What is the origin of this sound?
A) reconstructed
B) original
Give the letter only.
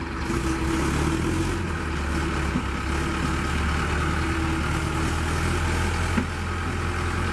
B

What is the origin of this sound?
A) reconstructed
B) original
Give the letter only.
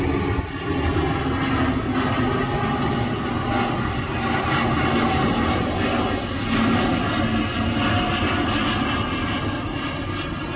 B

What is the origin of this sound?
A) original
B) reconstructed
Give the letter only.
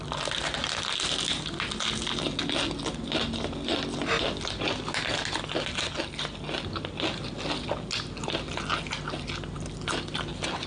A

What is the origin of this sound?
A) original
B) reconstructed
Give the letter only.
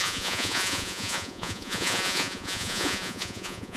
B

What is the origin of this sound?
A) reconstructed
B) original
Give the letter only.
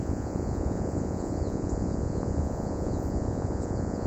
A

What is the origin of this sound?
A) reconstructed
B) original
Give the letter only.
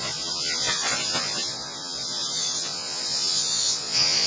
A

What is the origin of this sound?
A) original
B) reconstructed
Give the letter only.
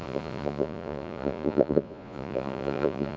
B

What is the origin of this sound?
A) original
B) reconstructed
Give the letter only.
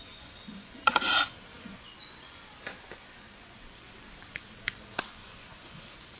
B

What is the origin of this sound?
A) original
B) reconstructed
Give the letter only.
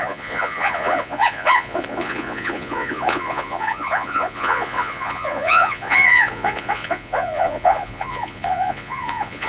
B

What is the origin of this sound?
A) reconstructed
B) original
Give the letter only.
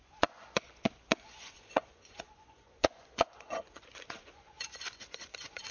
A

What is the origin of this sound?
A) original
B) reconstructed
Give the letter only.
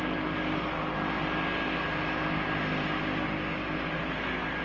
A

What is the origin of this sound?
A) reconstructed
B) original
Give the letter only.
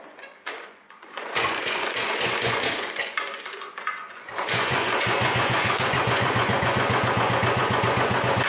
A